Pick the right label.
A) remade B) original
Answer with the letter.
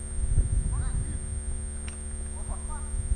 B